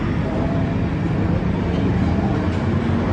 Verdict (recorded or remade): recorded